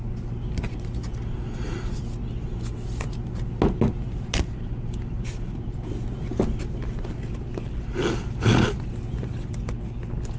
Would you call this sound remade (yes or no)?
no